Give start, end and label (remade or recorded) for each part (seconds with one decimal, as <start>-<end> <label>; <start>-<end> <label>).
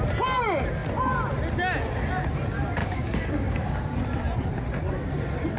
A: 0.0-2.8 recorded; 2.8-3.8 remade; 3.8-5.6 recorded